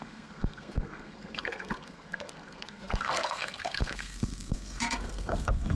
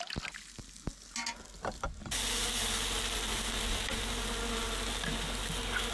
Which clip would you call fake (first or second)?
first